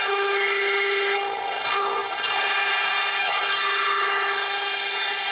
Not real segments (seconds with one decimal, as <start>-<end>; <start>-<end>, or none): 0.0-5.3